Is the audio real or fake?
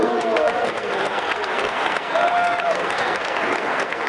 fake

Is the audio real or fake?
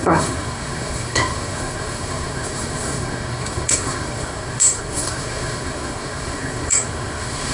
fake